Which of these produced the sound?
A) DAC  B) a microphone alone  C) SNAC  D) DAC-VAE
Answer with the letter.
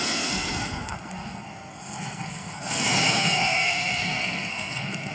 C